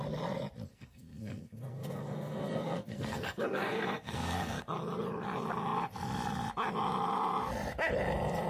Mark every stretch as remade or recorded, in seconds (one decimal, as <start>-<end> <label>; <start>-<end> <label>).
0.0-0.7 recorded; 0.7-4.6 remade; 4.6-8.5 recorded